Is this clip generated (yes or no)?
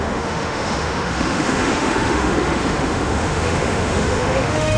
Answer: yes